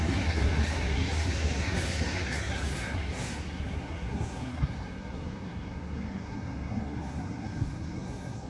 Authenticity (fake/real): fake